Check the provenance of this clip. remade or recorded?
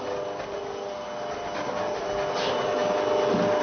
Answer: recorded